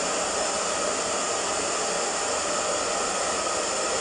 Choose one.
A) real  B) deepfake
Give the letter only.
A